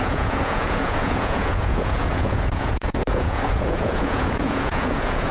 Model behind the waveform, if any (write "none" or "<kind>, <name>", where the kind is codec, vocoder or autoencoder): vocoder, Vocos